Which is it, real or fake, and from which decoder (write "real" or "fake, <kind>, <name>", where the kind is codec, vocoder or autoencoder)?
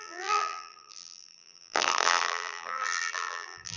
fake, vocoder, BigVGAN v2